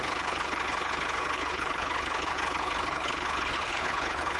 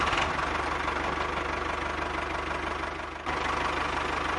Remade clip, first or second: first